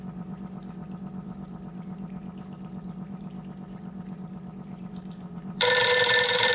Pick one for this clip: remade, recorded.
remade